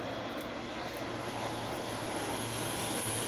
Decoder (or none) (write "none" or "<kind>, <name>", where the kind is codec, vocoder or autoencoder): vocoder, BigVGAN v2